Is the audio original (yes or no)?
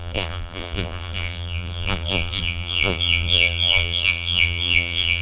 no